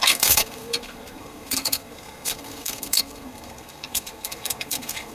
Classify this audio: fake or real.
fake